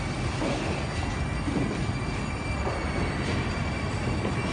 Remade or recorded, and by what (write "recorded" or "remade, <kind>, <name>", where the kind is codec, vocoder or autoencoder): recorded